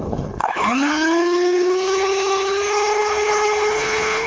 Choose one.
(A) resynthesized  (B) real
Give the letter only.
A